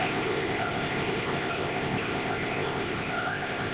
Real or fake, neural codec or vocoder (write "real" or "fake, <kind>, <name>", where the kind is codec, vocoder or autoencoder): fake, codec, ZipCodec